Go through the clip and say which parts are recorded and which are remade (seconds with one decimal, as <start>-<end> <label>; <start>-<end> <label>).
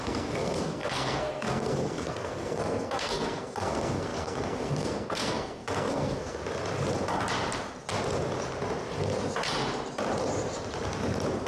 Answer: 0.0-6.4 remade; 6.4-11.5 recorded